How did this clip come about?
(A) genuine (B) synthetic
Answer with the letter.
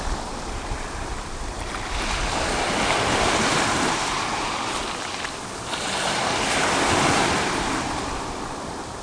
A